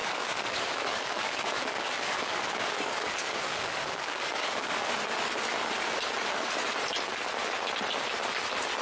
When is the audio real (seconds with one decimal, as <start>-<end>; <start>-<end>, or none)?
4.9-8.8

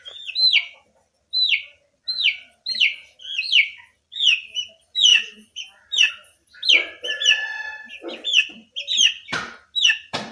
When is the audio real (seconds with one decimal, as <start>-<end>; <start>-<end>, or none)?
0.0-5.1; 6.1-10.3

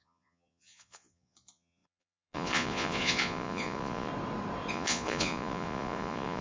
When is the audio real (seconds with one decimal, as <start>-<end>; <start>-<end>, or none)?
4.1-4.7

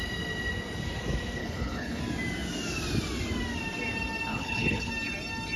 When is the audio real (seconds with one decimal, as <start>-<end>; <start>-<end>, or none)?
0.0-1.4; 2.0-4.3; 4.9-5.6

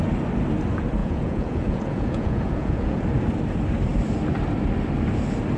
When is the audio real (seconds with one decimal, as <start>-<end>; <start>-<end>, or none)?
0.0-1.0; 3.0-5.6

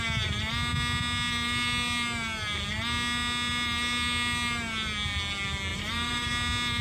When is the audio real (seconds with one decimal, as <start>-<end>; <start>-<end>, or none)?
0.0-5.7; 6.3-6.8

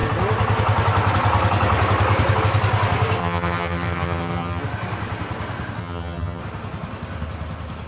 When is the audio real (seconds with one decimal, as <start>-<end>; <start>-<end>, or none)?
0.0-3.2; 4.6-5.8; 6.4-7.9

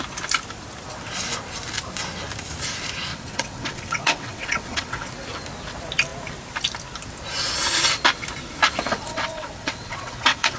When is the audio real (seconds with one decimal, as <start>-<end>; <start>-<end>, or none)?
0.0-3.1; 5.1-8.9